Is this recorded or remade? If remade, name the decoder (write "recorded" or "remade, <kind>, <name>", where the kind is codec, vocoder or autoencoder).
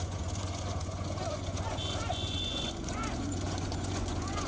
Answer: remade, vocoder, Vocos